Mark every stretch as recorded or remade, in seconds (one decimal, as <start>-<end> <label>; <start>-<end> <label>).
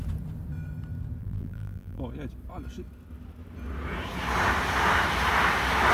0.0-1.2 recorded; 1.2-2.0 remade; 2.0-5.9 recorded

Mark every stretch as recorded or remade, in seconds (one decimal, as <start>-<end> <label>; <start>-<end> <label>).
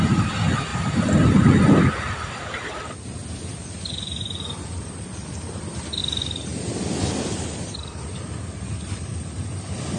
0.0-0.7 remade; 0.7-1.8 recorded; 1.8-6.0 remade; 6.0-7.3 recorded; 7.3-10.0 remade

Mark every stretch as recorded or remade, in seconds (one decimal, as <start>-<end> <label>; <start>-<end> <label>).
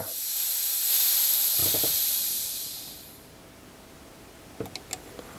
0.0-1.6 recorded; 1.6-2.2 remade; 2.2-5.4 recorded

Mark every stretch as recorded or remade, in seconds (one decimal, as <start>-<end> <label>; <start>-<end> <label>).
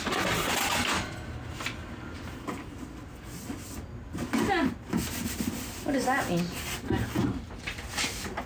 0.0-7.2 recorded; 7.2-8.5 remade